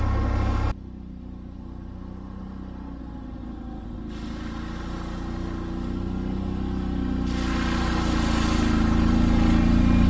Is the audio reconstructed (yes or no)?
no